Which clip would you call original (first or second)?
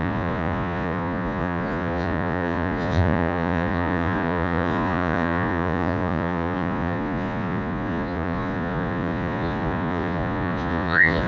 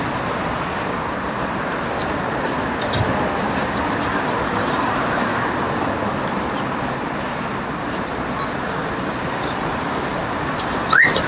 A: second